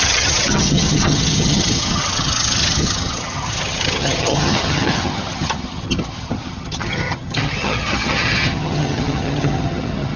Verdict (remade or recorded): remade